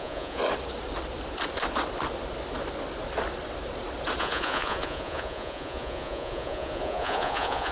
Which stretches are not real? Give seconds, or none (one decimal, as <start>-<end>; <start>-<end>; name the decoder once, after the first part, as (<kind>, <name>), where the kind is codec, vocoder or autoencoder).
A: 0.0-0.4 (vocoder, Vocos); 4.2-7.7